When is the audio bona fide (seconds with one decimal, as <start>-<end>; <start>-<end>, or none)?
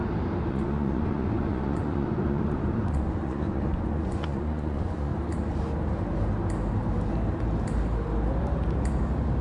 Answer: 0.0-0.5; 5.1-9.4